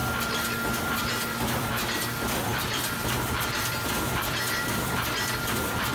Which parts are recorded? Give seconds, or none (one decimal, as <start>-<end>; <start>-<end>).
0.0-0.8